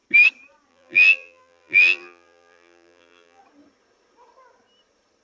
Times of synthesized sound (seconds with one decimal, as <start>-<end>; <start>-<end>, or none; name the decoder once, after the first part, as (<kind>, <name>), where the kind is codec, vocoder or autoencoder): 0.7-3.4 (vocoder, BigVGAN v2)